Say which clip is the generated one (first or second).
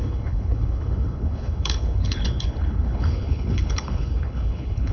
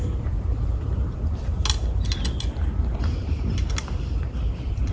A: first